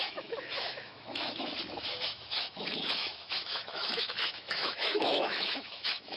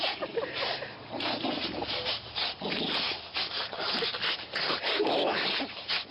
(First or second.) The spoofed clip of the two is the first